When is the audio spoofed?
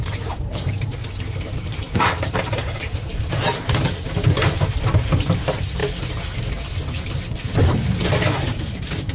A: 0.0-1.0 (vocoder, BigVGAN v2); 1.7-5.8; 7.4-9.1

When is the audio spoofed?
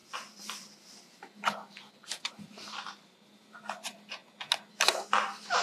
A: 0.0-4.2 (vocoder, BigVGAN v2); 5.1-5.6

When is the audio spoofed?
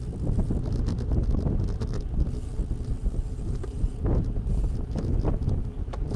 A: 3.0-5.1 (vocoder, BigVGAN v2)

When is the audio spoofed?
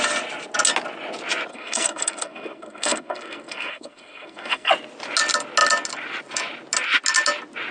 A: 1.5-4.7 (codec, SNAC)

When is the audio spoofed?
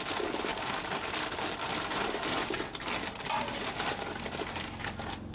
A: none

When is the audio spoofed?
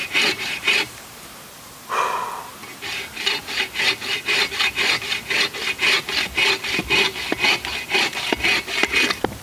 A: 0.0-1.4 (vocoder, BigVGAN v2); 2.6-5.0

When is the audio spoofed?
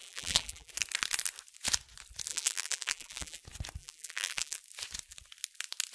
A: 0.0-0.7 (vocoder, BigVGAN v2); 2.3-3.4; 3.8-4.6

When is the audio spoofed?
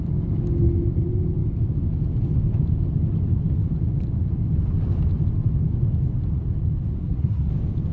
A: 7.0-7.5 (codec, SNAC)